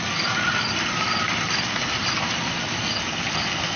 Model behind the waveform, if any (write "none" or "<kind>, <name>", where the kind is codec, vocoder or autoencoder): none